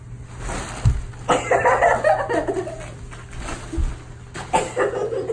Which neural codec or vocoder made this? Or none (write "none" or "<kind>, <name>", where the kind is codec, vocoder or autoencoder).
none